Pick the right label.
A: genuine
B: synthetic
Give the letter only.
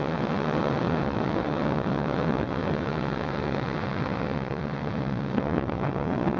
B